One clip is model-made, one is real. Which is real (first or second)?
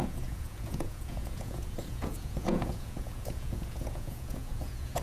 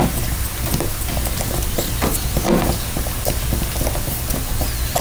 second